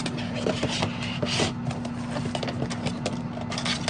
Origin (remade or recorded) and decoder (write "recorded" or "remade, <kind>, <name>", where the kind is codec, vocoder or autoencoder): recorded